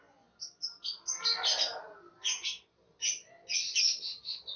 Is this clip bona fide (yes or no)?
yes